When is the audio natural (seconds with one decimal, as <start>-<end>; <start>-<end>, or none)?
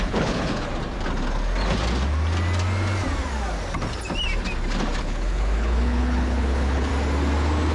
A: 0.7-5.0; 6.9-7.7